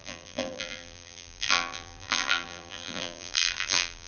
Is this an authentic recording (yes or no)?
no